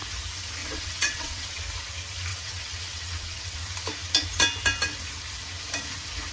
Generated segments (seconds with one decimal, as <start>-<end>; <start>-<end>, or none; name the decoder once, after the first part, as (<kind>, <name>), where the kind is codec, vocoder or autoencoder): 0.6-1.6 (vocoder, WaveNeXt); 2.3-3.6